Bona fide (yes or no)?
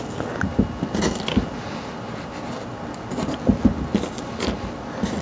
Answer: yes